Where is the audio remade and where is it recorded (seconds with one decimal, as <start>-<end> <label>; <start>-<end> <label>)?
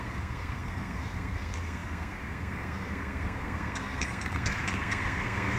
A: 0.0-5.6 remade